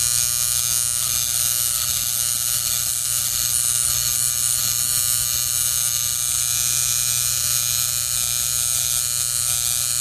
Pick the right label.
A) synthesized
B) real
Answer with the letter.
B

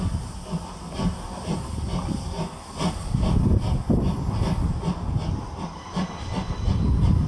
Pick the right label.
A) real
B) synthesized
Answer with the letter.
A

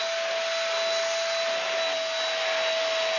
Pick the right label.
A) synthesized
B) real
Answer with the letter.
B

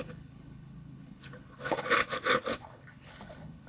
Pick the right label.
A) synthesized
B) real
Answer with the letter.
A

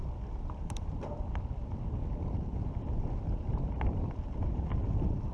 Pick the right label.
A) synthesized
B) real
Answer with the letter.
A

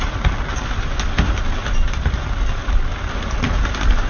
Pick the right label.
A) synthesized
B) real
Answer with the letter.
B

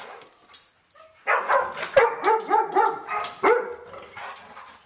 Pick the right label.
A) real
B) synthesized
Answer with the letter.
A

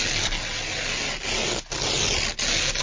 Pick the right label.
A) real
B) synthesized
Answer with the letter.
A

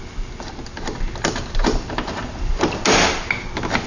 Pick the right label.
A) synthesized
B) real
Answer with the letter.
B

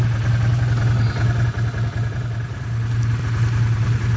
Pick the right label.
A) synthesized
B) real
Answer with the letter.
B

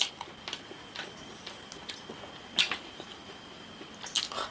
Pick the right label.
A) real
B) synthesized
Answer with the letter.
A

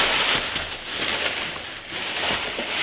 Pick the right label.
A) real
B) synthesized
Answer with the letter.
A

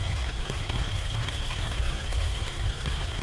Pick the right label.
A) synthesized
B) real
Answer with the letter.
A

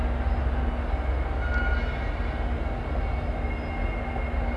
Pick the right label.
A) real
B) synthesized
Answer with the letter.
A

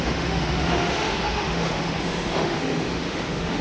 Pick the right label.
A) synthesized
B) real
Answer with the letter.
A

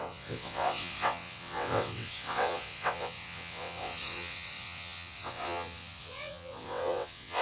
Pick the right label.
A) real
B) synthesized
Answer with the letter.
B